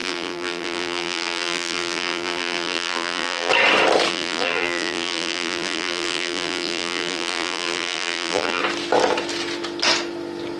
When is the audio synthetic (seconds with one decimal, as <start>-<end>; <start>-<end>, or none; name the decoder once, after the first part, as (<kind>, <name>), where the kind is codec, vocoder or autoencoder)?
0.0-3.5 (vocoder, BigVGAN v2); 4.1-8.6